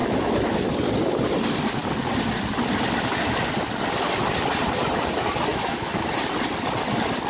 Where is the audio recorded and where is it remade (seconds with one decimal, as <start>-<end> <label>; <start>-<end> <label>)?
0.0-0.7 remade; 0.7-5.5 recorded; 5.5-6.1 remade; 6.1-7.3 recorded